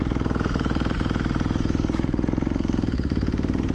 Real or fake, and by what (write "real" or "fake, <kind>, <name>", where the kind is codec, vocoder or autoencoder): fake, vocoder, BigVGAN v2